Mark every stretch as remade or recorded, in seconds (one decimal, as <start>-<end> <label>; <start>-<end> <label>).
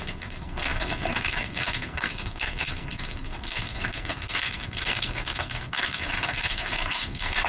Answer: 0.0-7.5 remade